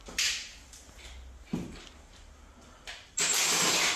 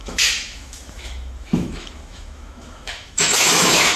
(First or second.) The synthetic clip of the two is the second